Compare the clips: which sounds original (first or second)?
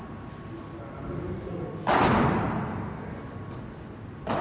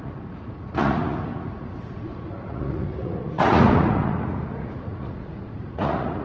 first